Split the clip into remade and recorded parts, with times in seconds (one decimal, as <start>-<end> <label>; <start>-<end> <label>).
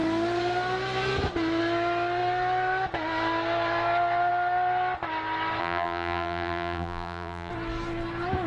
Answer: 0.0-5.6 recorded; 5.6-7.5 remade; 7.5-8.5 recorded